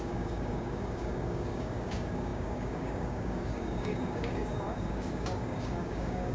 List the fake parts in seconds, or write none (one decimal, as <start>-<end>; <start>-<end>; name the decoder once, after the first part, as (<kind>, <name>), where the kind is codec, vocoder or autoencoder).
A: 0.0-6.3 (codec, DAC)